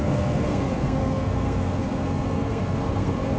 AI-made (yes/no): yes